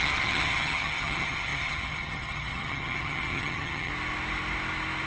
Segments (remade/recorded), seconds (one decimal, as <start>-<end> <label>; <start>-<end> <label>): 0.0-3.9 remade; 3.9-5.1 recorded